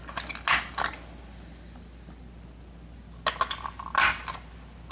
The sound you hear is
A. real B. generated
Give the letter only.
A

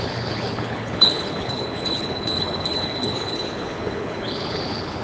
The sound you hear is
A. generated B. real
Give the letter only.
A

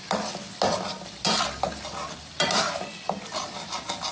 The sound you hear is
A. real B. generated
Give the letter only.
A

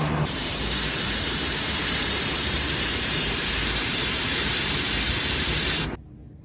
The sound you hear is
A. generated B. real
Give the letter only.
A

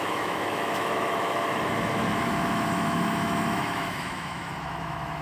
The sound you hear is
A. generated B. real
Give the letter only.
A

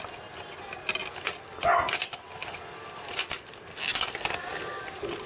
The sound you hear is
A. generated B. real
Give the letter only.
B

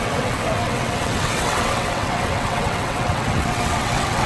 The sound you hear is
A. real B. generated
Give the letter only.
B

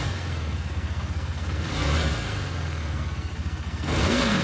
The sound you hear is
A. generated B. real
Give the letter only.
A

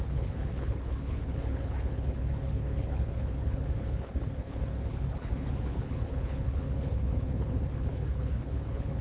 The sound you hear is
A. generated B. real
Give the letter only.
A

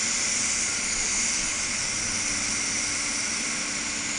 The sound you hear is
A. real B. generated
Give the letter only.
A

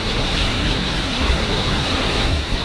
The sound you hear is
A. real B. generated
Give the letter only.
B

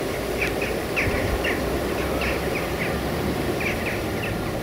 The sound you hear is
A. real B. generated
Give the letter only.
A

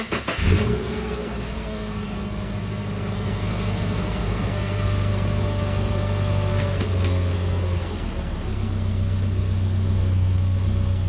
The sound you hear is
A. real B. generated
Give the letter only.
B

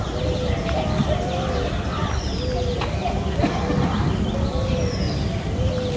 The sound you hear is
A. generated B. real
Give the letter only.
B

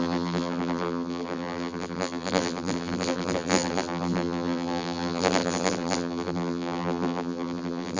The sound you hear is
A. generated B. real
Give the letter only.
A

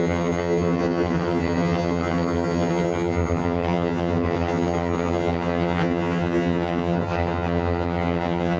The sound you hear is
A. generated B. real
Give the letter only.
A